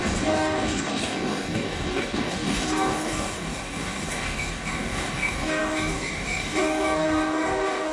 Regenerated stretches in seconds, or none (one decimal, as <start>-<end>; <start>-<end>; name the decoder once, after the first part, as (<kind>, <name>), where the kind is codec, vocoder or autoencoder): 0.0-7.9 (codec, DAC)